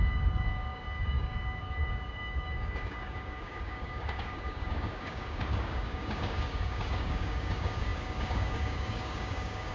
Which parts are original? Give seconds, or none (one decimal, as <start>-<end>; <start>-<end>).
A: none